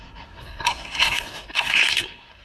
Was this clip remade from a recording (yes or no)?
yes